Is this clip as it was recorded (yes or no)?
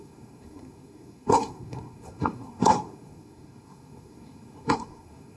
no